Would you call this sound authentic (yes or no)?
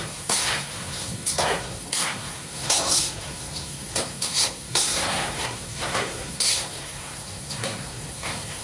no